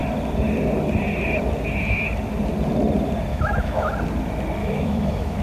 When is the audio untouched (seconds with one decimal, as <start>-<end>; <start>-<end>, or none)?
0.0-3.3; 3.9-4.6